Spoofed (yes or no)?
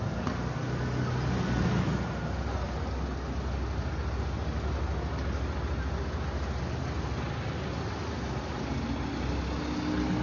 no